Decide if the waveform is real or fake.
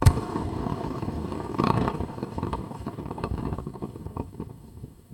fake